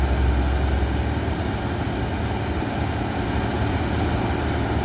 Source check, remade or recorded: recorded